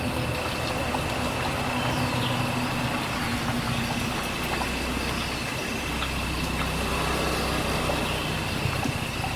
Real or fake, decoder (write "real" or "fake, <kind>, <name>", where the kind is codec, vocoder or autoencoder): real